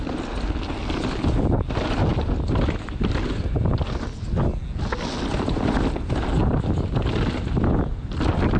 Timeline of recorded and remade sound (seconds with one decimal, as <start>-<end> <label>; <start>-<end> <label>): 0.0-8.6 recorded